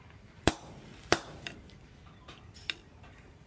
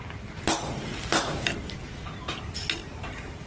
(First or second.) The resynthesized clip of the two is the first